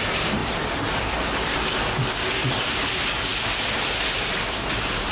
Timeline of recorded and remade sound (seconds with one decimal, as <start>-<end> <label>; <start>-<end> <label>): 0.0-0.4 remade; 0.4-2.3 recorded; 2.3-3.3 remade; 3.3-5.1 recorded